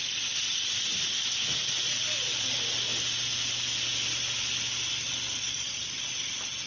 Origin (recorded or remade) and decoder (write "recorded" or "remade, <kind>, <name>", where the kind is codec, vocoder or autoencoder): recorded